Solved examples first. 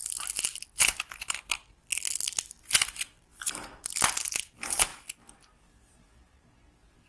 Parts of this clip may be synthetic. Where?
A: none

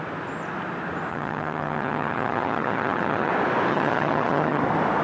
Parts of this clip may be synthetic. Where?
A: 1.1-3.3 (vocoder, HiFi-GAN); 3.7-4.6

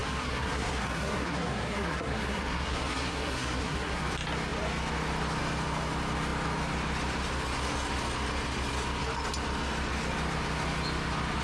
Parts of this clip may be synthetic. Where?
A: 0.0-4.0 (codec, SNAC)